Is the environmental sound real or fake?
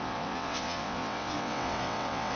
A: fake